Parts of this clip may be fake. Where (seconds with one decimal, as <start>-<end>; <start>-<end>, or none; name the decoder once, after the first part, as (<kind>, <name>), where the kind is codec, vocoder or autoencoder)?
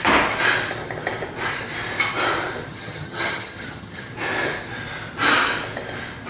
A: 2.7-4.1 (vocoder, HiFi-GAN)